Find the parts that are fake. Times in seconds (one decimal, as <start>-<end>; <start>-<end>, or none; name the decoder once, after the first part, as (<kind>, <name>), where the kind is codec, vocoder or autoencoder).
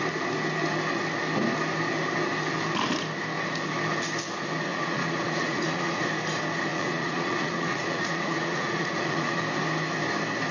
4.7-6.0 (vocoder, Vocos); 6.7-9.4